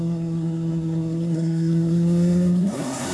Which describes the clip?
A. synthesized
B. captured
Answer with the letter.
A